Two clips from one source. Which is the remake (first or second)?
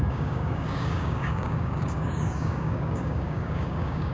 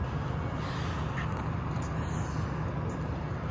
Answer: first